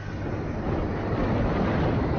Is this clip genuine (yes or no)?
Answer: yes